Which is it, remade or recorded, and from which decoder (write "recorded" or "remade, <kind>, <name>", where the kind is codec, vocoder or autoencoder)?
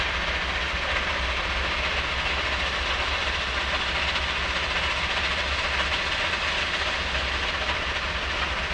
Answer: recorded